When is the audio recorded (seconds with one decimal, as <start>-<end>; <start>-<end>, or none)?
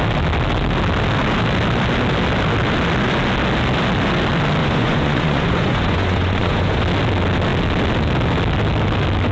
0.0-4.6; 6.8-9.3